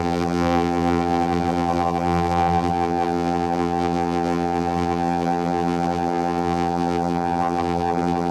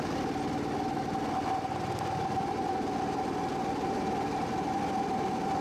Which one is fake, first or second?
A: first